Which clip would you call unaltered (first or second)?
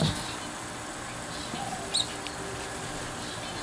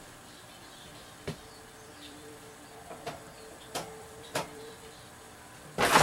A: first